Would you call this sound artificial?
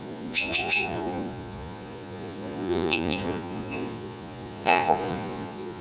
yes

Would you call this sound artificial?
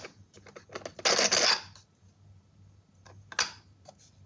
no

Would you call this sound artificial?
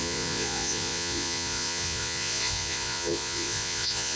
yes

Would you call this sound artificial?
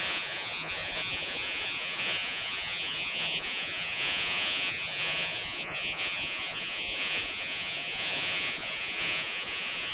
yes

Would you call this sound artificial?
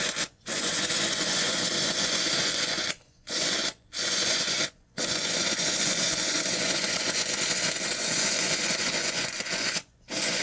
yes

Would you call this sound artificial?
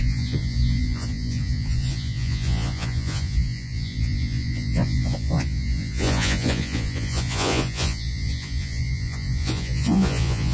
yes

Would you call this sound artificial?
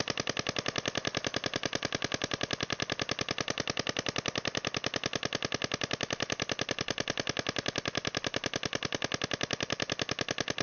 no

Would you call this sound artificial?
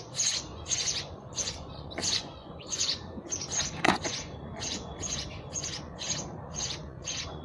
yes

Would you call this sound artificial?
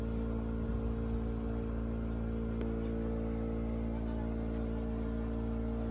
no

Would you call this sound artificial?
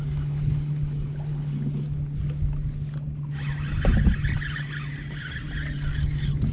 no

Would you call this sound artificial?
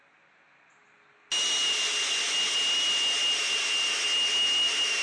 no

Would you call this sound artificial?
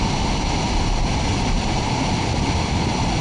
no